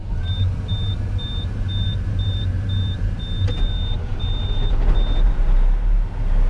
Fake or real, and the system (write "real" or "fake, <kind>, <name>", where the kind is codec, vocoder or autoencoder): real